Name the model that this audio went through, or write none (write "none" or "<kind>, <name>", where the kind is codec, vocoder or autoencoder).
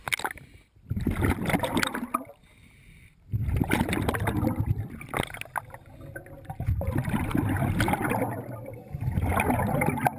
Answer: none